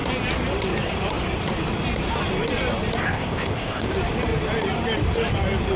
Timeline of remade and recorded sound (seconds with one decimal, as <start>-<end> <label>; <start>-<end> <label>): 0.0-3.0 recorded; 3.0-3.9 remade; 3.9-5.8 recorded